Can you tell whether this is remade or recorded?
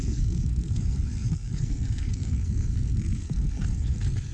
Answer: remade